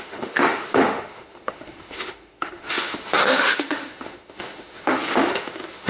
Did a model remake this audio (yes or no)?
yes